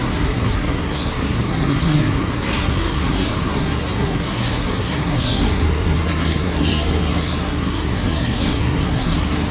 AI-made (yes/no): yes